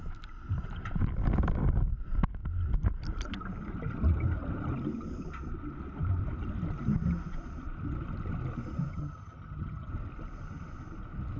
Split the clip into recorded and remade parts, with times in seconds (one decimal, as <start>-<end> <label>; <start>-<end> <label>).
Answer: 0.0-8.9 recorded; 8.9-9.9 remade; 9.9-11.4 recorded